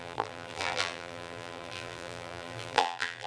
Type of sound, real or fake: fake